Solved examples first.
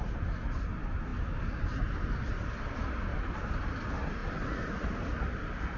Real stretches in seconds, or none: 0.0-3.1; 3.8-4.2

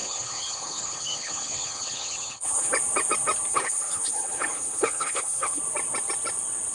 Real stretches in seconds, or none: 2.7-3.5; 5.6-6.7

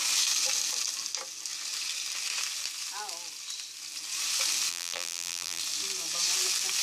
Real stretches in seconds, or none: 0.0-4.7; 5.6-6.8